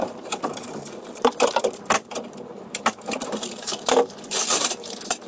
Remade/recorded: remade